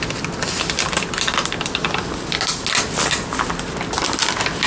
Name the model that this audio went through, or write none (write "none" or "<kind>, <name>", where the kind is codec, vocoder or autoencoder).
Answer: none